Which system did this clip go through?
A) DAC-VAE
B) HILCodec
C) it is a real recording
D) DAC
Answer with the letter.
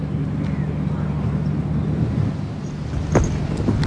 C